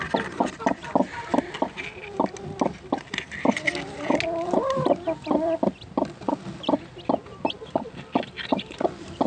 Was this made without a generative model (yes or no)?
yes